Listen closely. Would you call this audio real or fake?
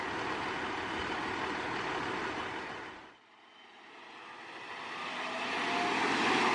real